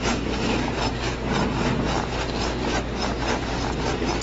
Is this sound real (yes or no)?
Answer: yes